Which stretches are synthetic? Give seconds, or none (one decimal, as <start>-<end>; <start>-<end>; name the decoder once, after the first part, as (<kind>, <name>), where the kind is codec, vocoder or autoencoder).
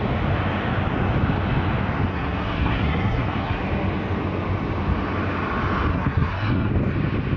2.1-3.6 (codec, SNAC); 5.9-6.7